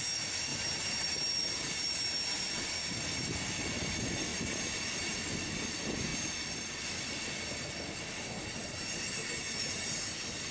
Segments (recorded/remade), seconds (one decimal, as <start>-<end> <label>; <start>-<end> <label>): 0.0-0.5 recorded; 0.5-1.9 remade; 1.9-4.3 recorded; 4.3-5.0 remade; 5.0-10.5 recorded